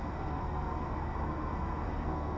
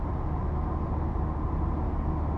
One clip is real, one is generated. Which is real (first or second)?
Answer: second